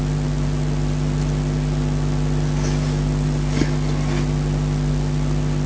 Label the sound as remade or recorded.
recorded